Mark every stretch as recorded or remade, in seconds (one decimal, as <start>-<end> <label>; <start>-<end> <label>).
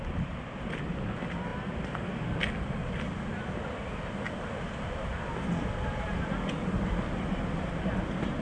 0.0-8.4 recorded